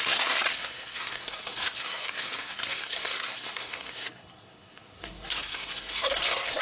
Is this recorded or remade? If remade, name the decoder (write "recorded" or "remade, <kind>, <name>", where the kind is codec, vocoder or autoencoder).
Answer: remade, codec, SNAC